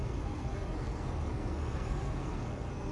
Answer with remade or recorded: remade